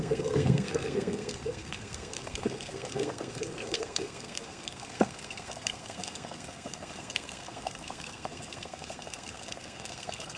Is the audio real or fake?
fake